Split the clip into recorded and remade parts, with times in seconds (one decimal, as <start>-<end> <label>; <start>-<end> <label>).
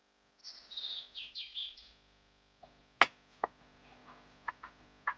0.0-5.2 recorded